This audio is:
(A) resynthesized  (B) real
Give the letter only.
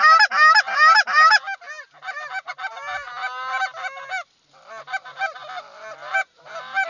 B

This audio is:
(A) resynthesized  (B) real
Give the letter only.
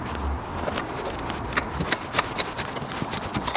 B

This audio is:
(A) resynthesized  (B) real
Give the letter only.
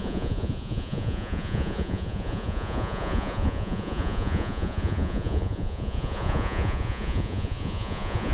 A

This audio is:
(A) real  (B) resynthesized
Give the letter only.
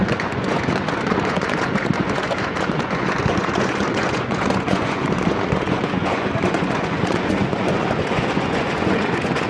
B